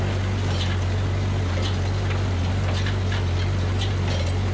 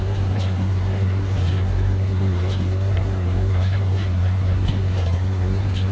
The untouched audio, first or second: first